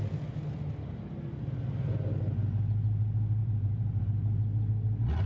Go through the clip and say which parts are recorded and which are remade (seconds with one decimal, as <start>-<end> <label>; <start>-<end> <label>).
0.0-3.4 recorded; 3.4-4.0 remade; 4.0-5.3 recorded